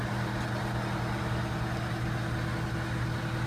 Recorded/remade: recorded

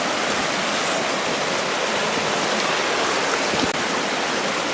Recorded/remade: recorded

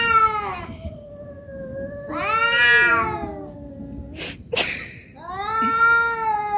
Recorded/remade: recorded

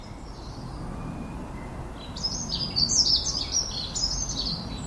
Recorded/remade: recorded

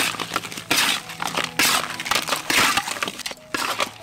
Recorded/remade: recorded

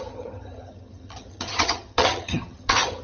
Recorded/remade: remade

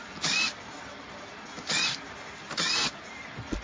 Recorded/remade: recorded